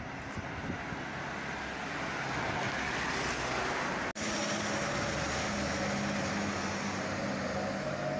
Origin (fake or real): real